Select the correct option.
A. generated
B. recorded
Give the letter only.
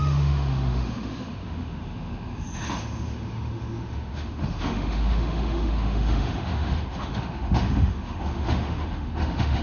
A